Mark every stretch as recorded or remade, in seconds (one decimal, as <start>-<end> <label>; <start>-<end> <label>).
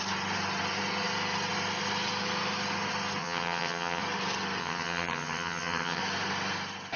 0.0-3.2 recorded; 3.2-4.0 remade; 4.0-4.6 recorded; 4.6-6.0 remade; 6.0-7.0 recorded